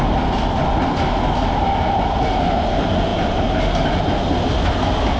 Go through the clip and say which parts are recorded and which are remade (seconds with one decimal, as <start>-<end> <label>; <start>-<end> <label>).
0.0-5.2 recorded